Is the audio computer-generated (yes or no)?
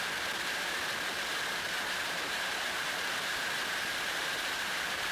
yes